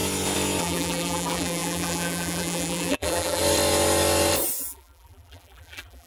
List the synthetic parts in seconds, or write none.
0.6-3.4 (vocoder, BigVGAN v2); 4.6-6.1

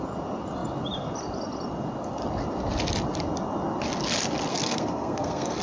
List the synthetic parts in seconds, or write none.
4.5-5.6 (codec, SNAC)